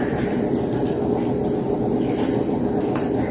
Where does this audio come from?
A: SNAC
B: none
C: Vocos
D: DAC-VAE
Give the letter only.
B